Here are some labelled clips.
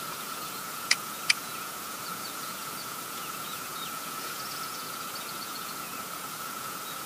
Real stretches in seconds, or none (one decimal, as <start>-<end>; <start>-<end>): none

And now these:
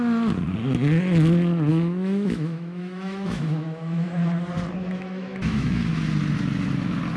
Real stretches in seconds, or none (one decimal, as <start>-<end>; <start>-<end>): 0.0-1.7; 4.1-4.8; 5.9-7.2

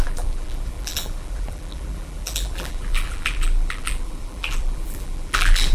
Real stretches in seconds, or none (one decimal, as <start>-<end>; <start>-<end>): none